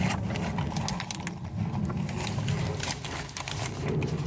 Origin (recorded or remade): recorded